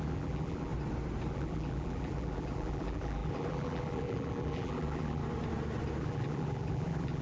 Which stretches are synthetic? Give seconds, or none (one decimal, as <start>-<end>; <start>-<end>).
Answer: 0.0-0.7; 1.3-5.2; 6.0-7.2

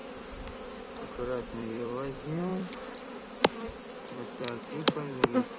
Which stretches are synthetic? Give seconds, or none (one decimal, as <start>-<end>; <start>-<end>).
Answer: 1.1-5.6

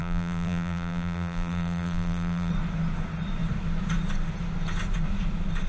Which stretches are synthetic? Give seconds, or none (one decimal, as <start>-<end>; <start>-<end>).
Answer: 0.0-2.5

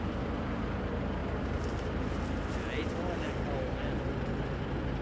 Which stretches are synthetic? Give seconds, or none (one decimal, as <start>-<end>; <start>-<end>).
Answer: 1.2-2.9

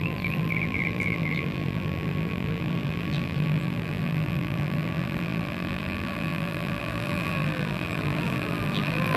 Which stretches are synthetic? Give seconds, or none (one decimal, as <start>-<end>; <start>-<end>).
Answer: 0.0-9.2